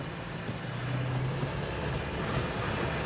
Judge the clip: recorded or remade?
recorded